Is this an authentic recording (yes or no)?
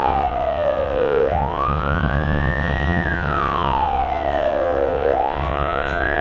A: no